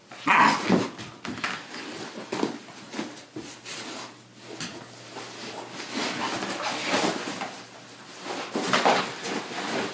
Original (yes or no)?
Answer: yes